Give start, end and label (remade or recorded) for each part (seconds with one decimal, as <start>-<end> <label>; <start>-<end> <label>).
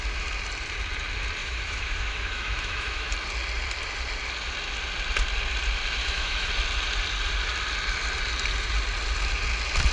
0.0-1.4 recorded; 1.4-3.1 remade; 3.1-6.0 recorded; 6.0-6.5 remade; 6.5-9.9 recorded